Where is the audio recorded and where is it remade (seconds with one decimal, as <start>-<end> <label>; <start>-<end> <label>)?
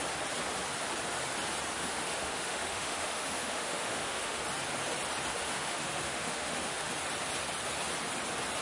0.0-1.8 recorded; 1.8-4.4 remade; 4.4-5.3 recorded; 5.3-6.9 remade; 6.9-8.6 recorded